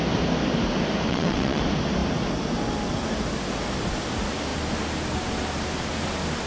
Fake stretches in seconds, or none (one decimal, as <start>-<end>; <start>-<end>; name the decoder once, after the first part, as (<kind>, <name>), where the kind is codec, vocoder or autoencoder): 1.1-1.6 (vocoder, WaveNeXt)

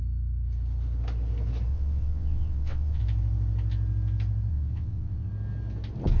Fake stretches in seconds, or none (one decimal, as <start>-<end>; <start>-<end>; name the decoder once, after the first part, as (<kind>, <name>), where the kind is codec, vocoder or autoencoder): 1.7-3.0 (vocoder, WaveNeXt); 4.5-5.3

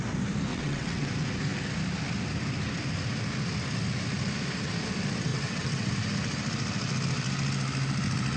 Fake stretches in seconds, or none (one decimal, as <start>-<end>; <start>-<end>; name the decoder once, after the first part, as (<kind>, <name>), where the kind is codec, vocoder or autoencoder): 0.5-1.1 (vocoder, WaveNeXt); 5.3-5.9

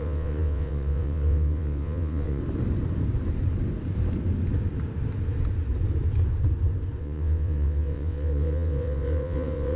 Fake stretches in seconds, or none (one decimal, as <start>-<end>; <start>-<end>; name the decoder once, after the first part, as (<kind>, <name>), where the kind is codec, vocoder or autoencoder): 0.0-2.4 (vocoder, WaveNeXt); 7.0-9.8

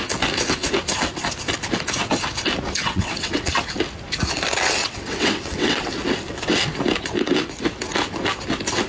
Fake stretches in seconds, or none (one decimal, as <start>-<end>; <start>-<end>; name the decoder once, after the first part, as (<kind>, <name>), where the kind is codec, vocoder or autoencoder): 2.8-3.5 (vocoder, WaveNeXt); 4.8-5.9

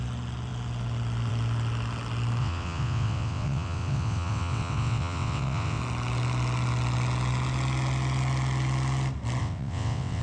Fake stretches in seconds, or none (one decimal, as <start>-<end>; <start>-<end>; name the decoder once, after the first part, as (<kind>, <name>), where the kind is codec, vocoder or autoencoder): 2.4-5.8 (vocoder, WaveNeXt); 9.4-10.2

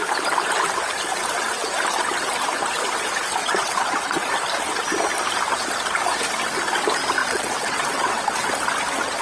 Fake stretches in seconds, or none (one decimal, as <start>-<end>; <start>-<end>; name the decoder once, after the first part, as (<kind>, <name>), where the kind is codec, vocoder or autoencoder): 3.4-4.3 (vocoder, WaveNeXt); 7.2-8.5